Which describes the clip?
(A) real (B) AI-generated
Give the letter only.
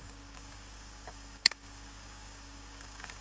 B